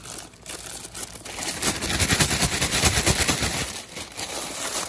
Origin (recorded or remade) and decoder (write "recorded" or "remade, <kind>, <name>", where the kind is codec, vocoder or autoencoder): recorded